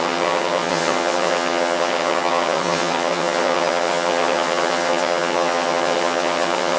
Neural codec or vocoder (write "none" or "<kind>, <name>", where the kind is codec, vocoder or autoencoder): vocoder, HiFi-GAN